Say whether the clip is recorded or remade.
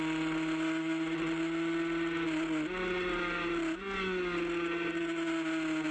recorded